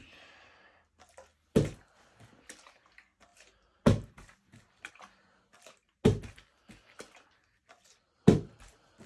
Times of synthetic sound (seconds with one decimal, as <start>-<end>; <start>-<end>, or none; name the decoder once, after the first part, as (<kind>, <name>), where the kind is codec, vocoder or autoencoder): none

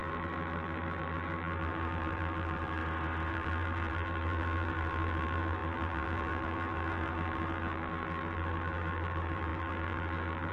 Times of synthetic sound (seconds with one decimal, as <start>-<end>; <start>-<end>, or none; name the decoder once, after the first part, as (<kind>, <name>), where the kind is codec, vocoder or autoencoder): 0.0-2.8 (vocoder, BigVGAN v2); 3.3-10.5

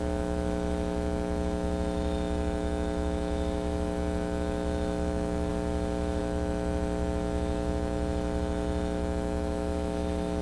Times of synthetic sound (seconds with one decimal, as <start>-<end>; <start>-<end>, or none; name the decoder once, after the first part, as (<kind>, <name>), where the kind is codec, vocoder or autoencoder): 0.0-5.5 (autoencoder, DAC-VAE); 6.2-10.4

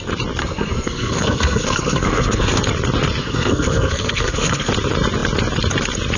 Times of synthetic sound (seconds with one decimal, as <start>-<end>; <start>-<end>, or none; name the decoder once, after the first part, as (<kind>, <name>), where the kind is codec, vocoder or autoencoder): 0.4-2.6 (codec, SNAC); 3.2-4.7

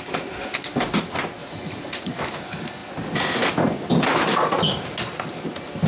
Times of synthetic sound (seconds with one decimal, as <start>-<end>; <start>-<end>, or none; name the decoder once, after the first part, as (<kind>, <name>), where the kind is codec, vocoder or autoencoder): 1.4-2.1 (vocoder, Vocos)

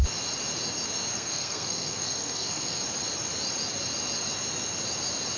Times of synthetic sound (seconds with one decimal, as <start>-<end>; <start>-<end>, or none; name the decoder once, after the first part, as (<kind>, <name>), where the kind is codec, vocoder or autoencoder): 1.1-2.8 (codec, SNAC)